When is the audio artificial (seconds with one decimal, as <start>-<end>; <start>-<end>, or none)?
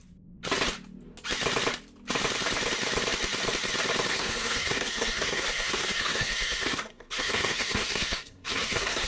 4.1-9.1